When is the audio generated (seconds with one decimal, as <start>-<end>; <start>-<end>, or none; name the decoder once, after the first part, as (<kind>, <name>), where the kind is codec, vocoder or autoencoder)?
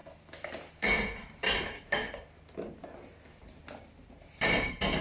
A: 0.7-1.4 (vocoder, BigVGAN v2); 4.0-5.0